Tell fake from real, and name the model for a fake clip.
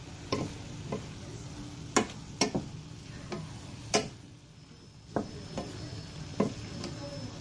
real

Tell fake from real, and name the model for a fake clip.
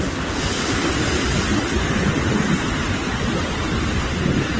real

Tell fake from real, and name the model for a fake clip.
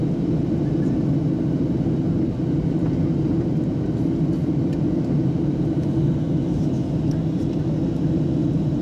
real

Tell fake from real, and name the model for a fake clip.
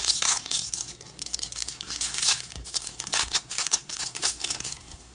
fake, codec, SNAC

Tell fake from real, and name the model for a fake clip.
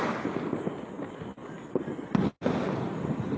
real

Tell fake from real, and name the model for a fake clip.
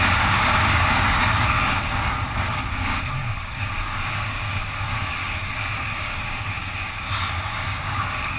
fake, codec, DAC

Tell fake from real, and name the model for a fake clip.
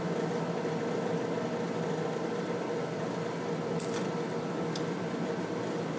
real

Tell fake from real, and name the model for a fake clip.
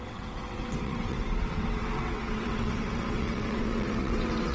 fake, vocoder, WaveNeXt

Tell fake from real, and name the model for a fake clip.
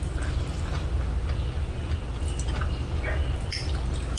real